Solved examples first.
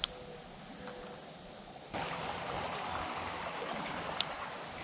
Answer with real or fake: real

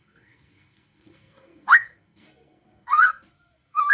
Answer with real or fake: fake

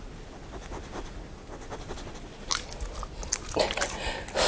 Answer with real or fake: real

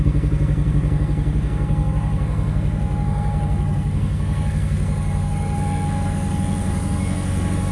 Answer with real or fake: fake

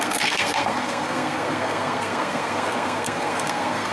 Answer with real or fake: fake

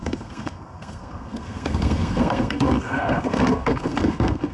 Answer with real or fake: fake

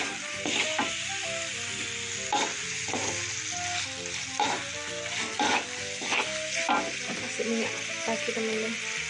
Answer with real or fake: real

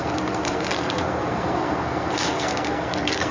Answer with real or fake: fake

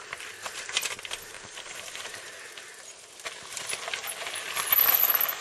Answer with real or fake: real